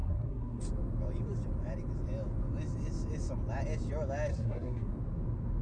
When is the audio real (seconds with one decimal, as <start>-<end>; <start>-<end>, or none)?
0.6-4.3; 4.9-5.6